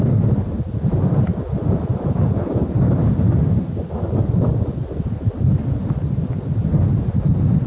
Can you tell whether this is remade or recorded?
recorded